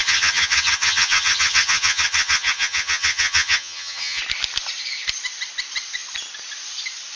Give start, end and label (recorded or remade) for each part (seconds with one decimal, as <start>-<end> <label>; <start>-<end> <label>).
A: 0.0-4.2 remade; 4.2-7.2 recorded